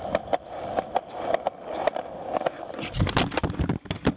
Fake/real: real